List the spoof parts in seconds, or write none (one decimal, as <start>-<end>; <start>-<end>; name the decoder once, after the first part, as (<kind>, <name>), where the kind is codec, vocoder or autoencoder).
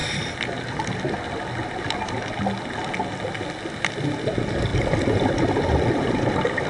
4.7-6.7 (vocoder, BigVGAN v2)